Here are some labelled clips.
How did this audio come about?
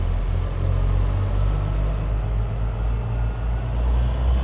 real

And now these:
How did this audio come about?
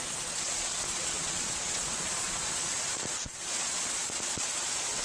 fake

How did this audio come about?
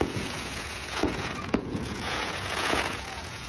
fake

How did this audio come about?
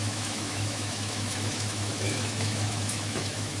fake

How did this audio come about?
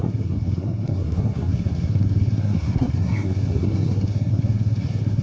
fake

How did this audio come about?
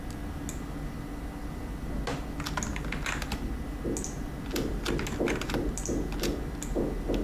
real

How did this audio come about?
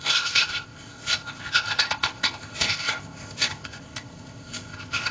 fake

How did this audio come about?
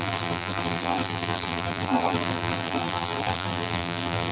fake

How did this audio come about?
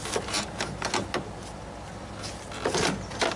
real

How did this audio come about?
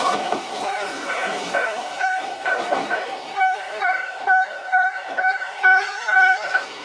fake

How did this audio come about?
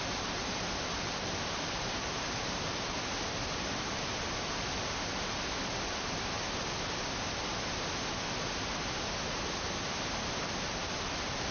real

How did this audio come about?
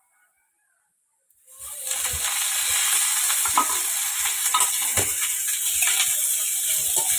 real